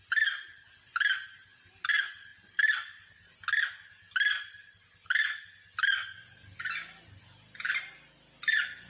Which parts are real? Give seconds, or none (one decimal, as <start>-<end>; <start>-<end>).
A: 0.0-8.9